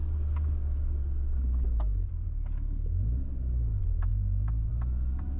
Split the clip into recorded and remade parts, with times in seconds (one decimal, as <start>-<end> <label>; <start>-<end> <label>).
0.0-5.4 recorded